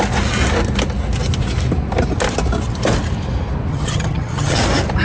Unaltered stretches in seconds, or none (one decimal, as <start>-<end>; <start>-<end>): 0.0-3.7; 4.6-5.0